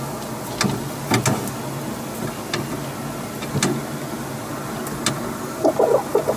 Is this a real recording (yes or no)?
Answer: yes